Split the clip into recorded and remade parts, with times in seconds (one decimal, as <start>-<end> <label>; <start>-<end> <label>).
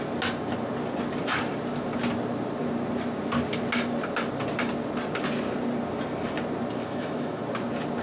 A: 0.0-6.8 recorded; 6.8-7.4 remade; 7.4-8.0 recorded